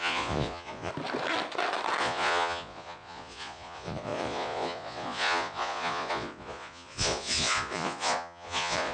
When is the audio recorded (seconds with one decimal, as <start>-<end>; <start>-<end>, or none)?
0.9-2.0